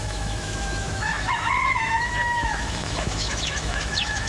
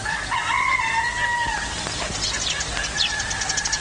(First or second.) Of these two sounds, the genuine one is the second